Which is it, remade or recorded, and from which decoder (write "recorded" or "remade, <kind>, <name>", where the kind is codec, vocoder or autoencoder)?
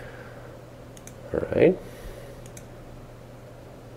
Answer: recorded